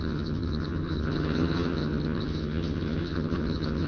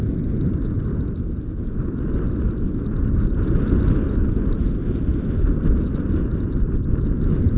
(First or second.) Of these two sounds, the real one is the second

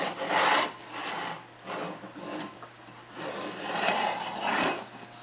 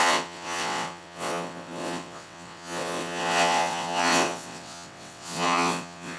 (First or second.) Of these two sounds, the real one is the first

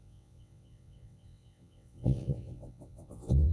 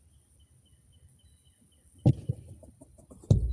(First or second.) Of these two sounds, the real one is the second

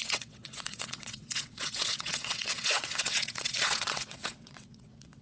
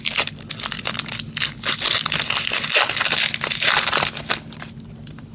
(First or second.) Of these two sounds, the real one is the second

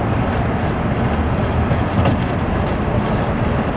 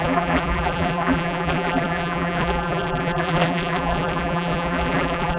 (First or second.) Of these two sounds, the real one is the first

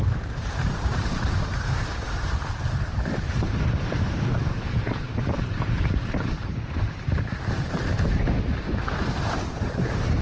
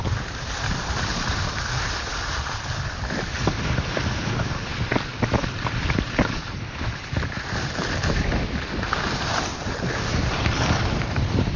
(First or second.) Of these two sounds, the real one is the second